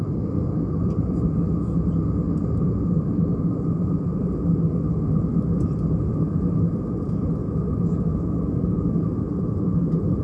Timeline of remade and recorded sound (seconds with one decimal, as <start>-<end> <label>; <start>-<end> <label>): 0.0-10.2 recorded